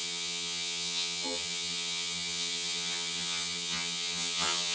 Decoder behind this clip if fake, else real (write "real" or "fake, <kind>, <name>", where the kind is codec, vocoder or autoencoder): fake, vocoder, HiFi-GAN